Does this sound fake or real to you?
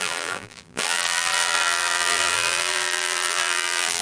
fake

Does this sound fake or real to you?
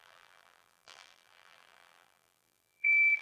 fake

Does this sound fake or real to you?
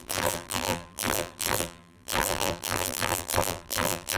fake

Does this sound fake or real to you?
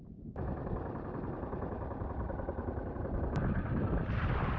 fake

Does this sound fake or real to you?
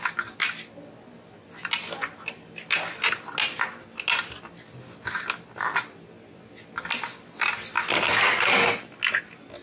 real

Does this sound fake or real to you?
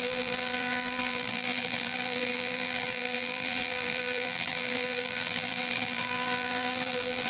fake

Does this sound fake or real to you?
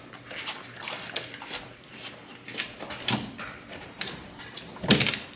fake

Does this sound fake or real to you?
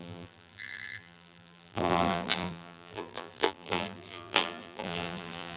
fake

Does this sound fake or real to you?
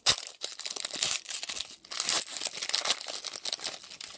real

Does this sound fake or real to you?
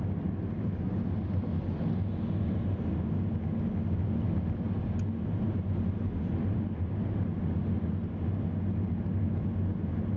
real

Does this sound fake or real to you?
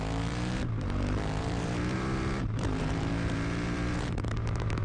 fake